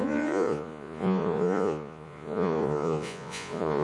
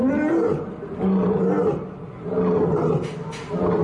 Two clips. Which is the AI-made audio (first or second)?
first